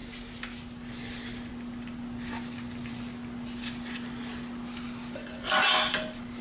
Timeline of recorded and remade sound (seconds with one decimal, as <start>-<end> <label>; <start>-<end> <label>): 0.0-6.4 recorded